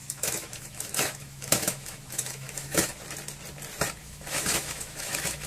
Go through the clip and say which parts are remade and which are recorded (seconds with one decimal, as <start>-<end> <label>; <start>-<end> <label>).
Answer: 0.0-2.9 remade; 2.9-4.0 recorded; 4.0-5.5 remade